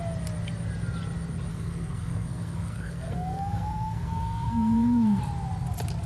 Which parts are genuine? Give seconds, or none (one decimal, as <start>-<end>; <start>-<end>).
0.0-1.5; 5.2-6.1